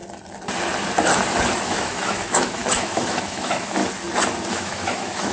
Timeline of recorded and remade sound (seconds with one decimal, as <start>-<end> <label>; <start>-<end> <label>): 0.0-1.7 recorded; 1.7-3.8 remade; 3.8-4.5 recorded; 4.5-5.3 remade

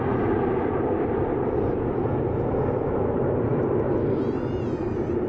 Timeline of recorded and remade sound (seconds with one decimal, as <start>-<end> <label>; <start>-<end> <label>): 0.0-5.3 recorded

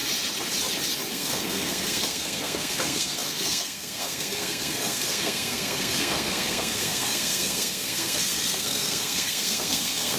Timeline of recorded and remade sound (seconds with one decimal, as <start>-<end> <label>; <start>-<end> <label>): 0.0-1.1 recorded; 1.1-10.2 remade

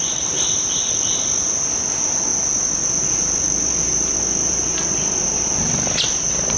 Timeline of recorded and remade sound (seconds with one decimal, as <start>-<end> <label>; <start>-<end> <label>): 0.0-6.6 recorded

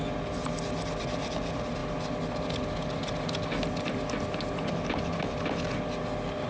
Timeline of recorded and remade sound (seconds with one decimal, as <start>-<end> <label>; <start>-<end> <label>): 0.0-6.5 recorded